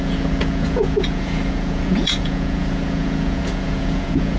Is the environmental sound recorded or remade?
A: remade